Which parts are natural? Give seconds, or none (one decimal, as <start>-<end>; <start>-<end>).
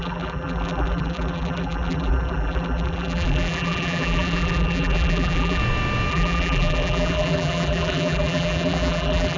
5.6-6.1